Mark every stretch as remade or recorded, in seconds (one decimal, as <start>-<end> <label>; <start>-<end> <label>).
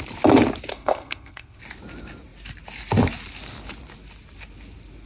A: 0.0-0.7 recorded; 0.7-1.6 remade; 1.6-5.1 recorded